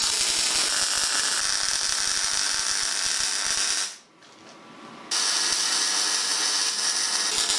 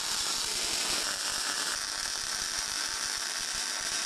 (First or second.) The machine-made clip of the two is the second